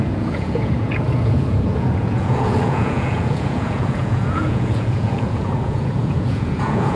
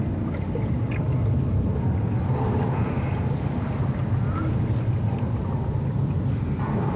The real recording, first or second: second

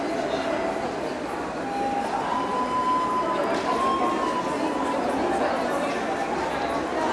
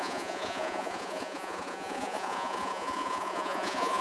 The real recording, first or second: first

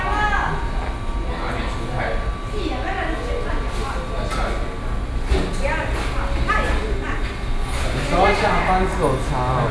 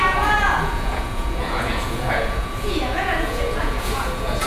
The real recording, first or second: first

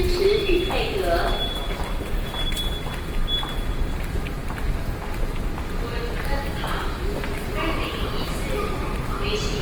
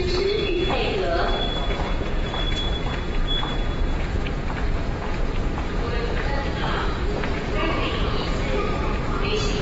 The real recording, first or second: first